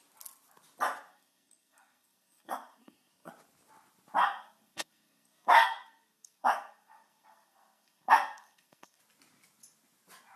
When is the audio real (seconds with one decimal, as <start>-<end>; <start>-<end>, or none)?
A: 0.0-1.1; 3.3-4.2; 9.0-10.4